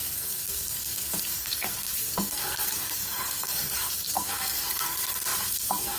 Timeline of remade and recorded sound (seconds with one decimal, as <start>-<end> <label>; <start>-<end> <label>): 0.0-6.0 remade